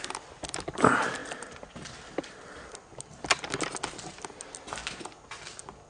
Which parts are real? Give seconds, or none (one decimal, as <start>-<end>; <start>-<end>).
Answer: 0.0-5.9